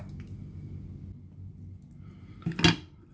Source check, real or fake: real